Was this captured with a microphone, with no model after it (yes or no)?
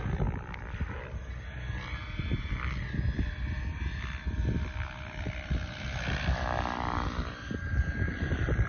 yes